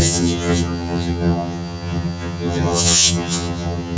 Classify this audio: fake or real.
fake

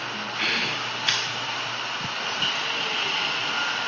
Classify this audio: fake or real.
real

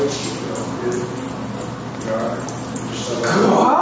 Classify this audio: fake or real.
real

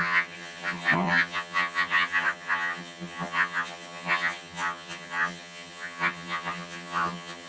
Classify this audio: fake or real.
fake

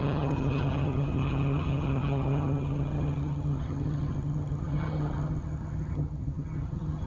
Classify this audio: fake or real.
fake